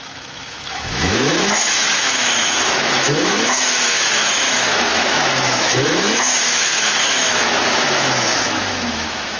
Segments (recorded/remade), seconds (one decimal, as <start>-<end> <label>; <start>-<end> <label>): 0.0-9.4 remade